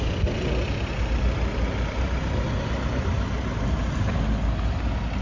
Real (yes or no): yes